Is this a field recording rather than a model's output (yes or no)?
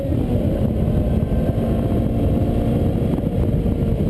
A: yes